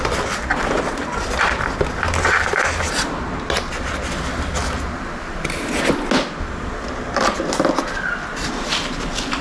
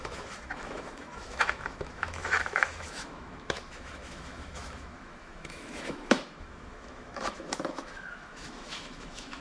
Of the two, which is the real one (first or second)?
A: first